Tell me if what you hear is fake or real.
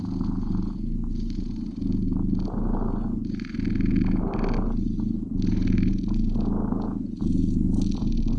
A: real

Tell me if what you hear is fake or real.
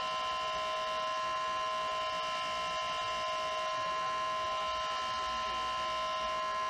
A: real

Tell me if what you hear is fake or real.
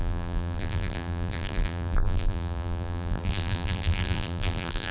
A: fake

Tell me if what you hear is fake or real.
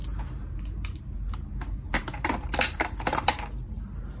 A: fake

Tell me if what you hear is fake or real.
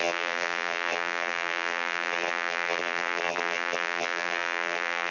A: fake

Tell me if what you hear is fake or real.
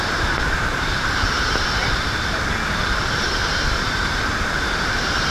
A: fake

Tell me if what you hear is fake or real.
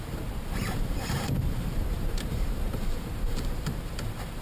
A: fake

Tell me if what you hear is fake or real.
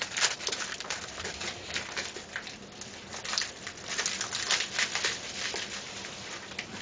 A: fake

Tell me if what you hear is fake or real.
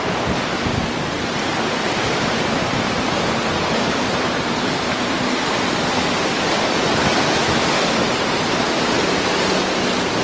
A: fake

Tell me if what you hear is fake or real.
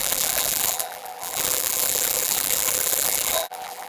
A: fake